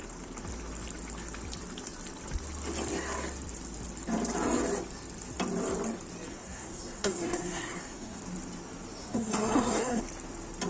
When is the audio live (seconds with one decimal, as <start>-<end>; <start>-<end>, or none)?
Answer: 0.0-6.3; 8.2-9.0; 10.0-10.7